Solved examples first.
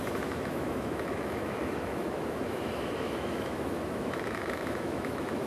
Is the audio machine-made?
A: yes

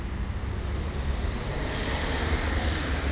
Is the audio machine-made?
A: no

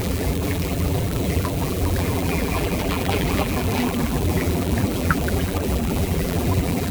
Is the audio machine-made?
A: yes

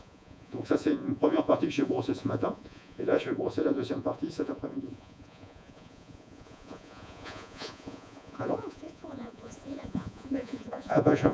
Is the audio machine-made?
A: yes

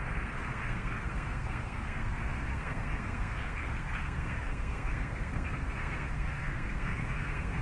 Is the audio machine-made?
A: yes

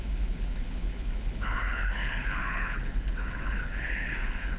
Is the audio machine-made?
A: yes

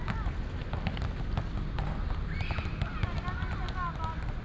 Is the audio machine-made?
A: no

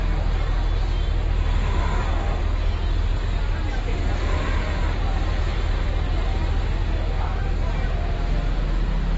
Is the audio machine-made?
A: no